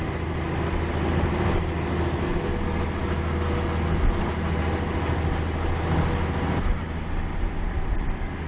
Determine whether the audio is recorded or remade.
recorded